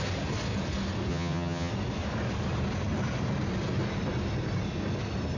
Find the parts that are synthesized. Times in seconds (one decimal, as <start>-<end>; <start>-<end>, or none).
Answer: 1.1-1.7